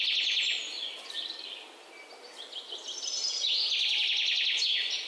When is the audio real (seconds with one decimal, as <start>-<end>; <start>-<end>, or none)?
0.0-5.1